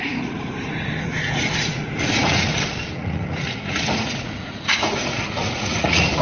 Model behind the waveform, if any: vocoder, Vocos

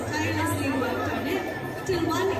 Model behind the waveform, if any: none